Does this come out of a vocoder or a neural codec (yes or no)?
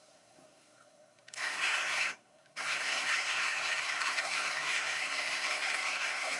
yes